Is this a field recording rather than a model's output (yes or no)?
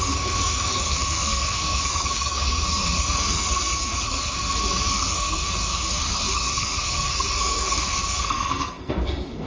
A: no